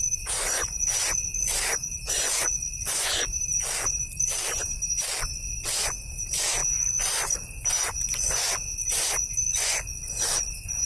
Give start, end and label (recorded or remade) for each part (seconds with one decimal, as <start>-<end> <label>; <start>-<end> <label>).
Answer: 0.0-3.3 remade; 3.3-5.6 recorded; 5.6-10.9 remade